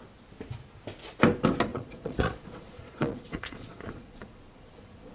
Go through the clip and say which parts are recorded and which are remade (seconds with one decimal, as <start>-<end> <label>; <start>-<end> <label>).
0.0-1.7 recorded; 1.7-5.1 remade